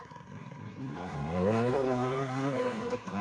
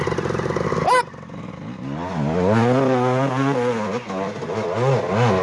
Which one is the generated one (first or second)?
first